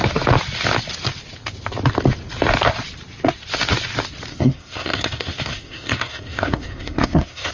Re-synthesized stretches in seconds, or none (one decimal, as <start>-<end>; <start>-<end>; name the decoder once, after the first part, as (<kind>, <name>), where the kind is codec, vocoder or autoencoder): 4.3-7.5 (codec, SNAC)